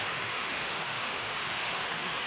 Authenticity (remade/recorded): remade